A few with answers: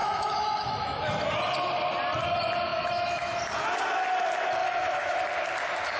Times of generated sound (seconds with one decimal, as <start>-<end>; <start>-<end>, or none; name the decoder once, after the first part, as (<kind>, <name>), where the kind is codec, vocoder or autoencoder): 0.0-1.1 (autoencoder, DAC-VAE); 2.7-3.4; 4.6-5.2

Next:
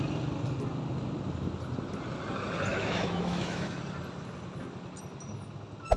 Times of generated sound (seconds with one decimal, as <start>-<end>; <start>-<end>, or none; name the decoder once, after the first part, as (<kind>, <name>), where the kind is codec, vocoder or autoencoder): 2.7-3.8 (autoencoder, DAC-VAE)

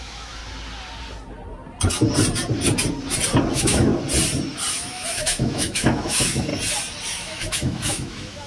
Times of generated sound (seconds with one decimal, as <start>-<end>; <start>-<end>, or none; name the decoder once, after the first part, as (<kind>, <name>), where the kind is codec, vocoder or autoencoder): 0.0-0.4 (autoencoder, DAC-VAE); 3.5-3.9; 4.7-6.5; 7.1-8.5